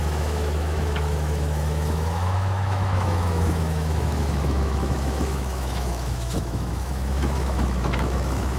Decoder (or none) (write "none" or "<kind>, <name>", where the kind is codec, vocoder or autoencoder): autoencoder, DAC-VAE